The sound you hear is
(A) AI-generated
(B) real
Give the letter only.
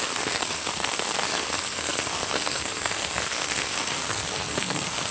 A